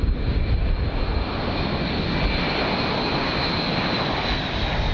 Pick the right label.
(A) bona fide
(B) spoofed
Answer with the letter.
A